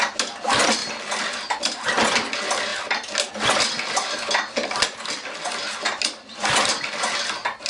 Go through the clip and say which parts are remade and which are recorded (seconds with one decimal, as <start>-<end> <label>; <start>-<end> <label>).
0.0-7.7 recorded